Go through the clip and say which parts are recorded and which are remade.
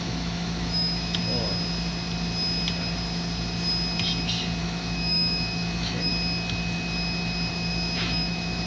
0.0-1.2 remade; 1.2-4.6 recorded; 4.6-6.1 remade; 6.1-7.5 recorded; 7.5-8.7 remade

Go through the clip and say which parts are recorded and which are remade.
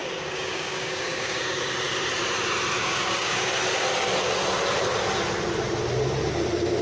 0.0-1.6 remade; 1.6-2.8 recorded; 2.8-3.5 remade; 3.5-6.8 recorded